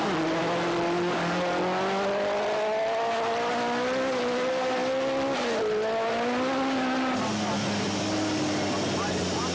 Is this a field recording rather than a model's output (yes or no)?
yes